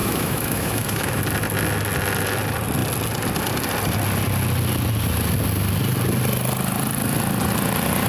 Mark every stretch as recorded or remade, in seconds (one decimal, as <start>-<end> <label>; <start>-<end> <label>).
0.0-1.2 remade; 1.2-8.1 recorded